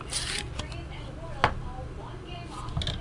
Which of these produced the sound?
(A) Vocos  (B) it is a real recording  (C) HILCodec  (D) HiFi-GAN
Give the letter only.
B